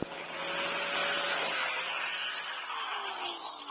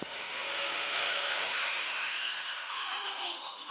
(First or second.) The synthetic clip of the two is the second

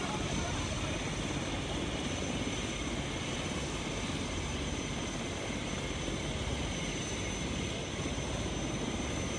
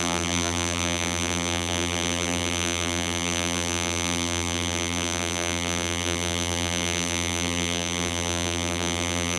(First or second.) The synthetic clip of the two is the second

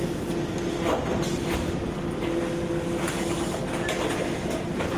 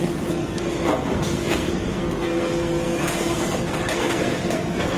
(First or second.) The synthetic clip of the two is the second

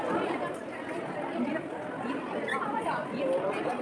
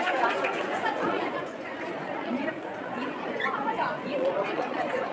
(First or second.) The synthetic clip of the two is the second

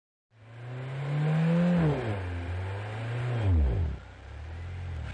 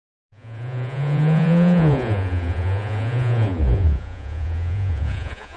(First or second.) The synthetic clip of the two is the second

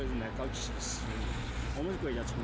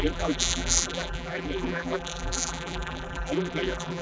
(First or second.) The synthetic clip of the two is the second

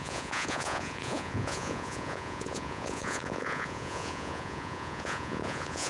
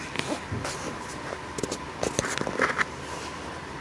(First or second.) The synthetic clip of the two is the first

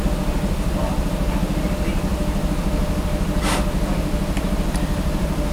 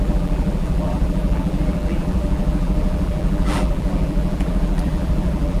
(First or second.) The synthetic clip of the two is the second